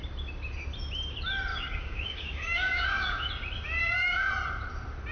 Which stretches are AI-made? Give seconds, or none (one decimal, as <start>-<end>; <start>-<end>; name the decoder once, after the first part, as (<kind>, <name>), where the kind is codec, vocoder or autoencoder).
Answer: 1.5-3.3 (codec, DAC); 3.8-4.3